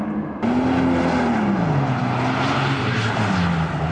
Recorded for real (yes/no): yes